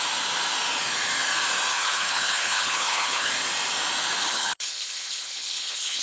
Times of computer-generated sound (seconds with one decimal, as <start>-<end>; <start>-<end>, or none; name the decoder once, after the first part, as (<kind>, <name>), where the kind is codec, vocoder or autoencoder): 1.7-3.3 (codec, HILCodec); 4.2-6.0